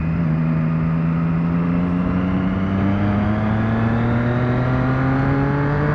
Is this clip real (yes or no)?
yes